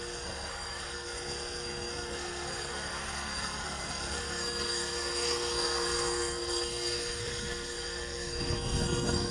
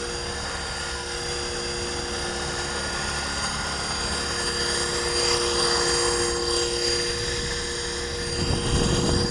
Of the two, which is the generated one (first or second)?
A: first